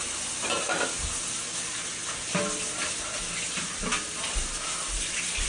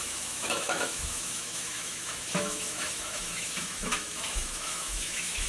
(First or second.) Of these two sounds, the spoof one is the second